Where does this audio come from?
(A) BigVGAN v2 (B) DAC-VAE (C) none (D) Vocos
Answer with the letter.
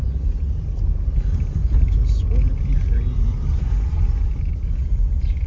C